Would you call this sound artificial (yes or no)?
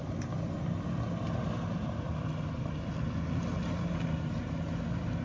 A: no